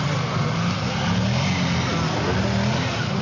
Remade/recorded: recorded